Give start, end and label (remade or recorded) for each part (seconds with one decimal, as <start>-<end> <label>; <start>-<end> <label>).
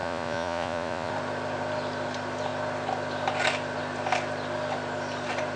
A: 0.0-1.1 remade; 1.1-5.6 recorded